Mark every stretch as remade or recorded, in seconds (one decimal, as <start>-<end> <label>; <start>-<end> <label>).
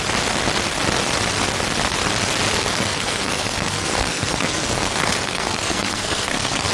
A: 0.0-2.5 recorded; 2.5-6.7 remade